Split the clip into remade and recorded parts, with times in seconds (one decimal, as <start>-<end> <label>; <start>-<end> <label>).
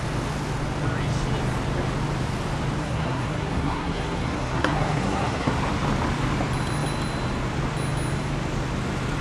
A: 0.0-2.8 recorded; 2.8-5.5 remade; 5.5-9.2 recorded